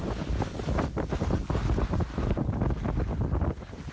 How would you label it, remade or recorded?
recorded